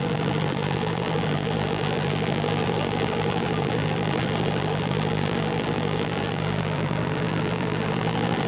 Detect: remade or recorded remade